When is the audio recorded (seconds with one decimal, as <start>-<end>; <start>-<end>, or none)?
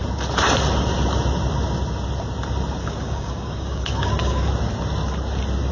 0.0-2.8; 4.5-5.7